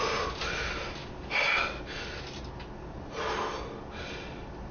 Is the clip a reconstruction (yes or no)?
no